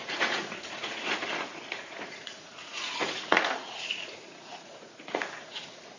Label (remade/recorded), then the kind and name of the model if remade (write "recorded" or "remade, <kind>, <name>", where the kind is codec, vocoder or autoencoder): remade, vocoder, Vocos